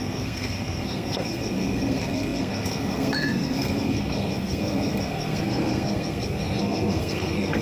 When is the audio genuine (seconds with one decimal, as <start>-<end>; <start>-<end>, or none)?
none